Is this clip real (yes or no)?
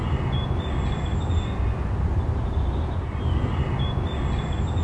yes